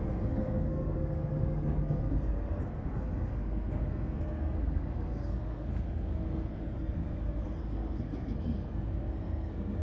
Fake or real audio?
fake